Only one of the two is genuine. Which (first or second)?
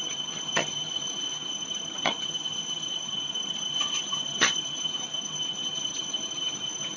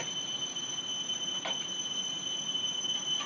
second